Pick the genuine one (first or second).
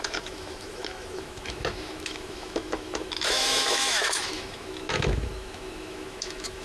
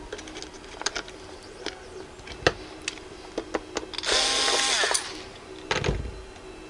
second